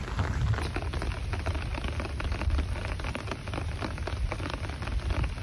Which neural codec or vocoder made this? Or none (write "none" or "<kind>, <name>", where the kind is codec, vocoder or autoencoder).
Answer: none